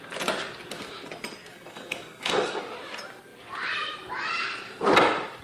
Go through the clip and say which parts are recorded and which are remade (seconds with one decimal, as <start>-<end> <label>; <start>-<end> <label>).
0.0-1.5 recorded; 1.5-2.6 remade; 2.6-5.4 recorded

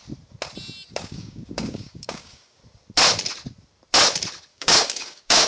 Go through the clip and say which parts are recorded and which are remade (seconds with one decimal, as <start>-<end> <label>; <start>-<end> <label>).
0.0-0.9 recorded; 0.9-2.6 remade; 2.6-4.5 recorded; 4.5-5.5 remade

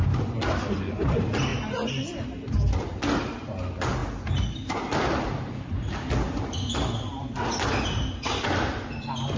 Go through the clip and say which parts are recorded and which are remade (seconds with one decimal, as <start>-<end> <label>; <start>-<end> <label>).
0.0-9.4 recorded